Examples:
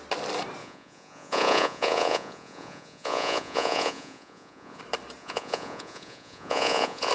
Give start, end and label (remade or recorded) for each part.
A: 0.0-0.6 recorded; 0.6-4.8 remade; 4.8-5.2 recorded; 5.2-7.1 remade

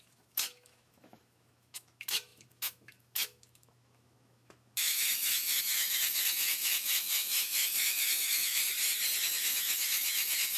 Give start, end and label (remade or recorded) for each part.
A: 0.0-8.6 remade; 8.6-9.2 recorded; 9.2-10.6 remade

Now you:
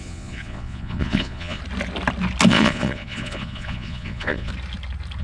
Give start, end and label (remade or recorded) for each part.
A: 0.0-1.6 remade; 1.6-2.5 recorded; 2.5-4.5 remade; 4.5-5.2 recorded

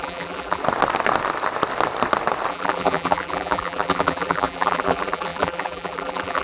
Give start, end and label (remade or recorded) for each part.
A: 0.0-0.6 remade; 0.6-2.5 recorded; 2.5-6.4 remade

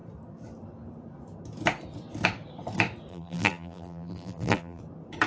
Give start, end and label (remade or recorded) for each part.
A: 0.0-3.1 recorded; 3.1-4.8 remade; 4.8-5.3 recorded

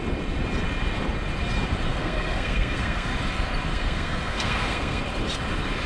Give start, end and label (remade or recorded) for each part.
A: 0.0-1.9 recorded; 1.9-3.1 remade; 3.1-3.7 recorded; 3.7-5.0 remade; 5.0-5.9 recorded